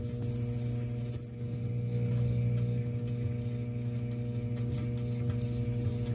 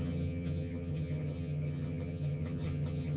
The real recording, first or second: first